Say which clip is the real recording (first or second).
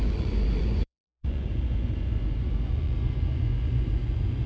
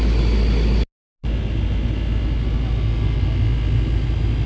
second